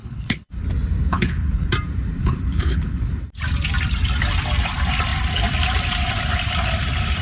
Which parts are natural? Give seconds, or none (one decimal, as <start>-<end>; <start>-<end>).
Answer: 0.7-1.1; 1.7-2.2; 3.1-7.2